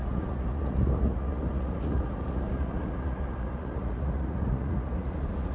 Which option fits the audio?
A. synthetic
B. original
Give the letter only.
A